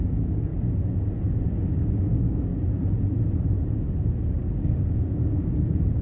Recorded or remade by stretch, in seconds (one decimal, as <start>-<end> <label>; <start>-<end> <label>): 0.0-0.5 remade; 0.5-1.7 recorded; 1.7-2.5 remade; 2.5-4.3 recorded; 4.3-6.0 remade